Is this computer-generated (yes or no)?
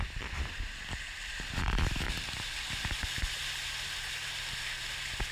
no